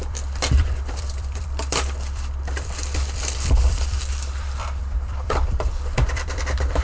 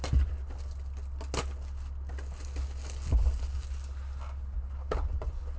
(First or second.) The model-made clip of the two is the first